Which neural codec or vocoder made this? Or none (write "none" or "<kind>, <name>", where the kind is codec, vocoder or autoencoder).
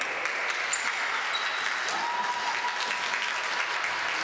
none